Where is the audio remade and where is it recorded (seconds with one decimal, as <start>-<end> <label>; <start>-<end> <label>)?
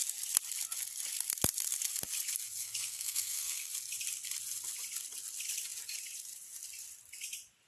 0.0-2.6 recorded; 2.6-3.7 remade; 3.7-7.7 recorded